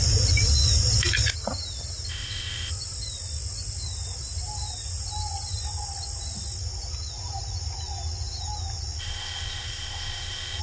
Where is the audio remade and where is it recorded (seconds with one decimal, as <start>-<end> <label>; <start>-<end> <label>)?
0.0-2.1 recorded; 2.1-2.7 remade; 2.7-9.0 recorded; 9.0-10.6 remade